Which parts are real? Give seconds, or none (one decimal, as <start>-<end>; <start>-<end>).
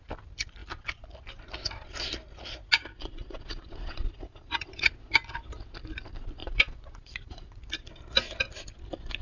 0.0-3.0; 4.9-6.4; 7.6-9.2